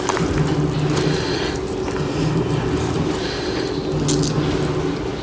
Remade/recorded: recorded